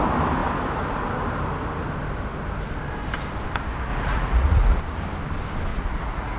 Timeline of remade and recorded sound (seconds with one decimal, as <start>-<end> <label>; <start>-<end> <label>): 0.0-3.9 recorded; 3.9-4.8 remade; 4.8-5.7 recorded; 5.7-6.4 remade